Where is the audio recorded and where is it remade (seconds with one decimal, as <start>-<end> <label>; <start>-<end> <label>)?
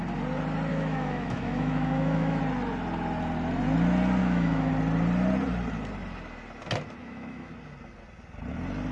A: 0.0-0.7 recorded; 0.7-2.4 remade; 2.4-4.2 recorded; 4.2-4.7 remade; 4.7-7.0 recorded; 7.0-7.5 remade; 7.5-8.9 recorded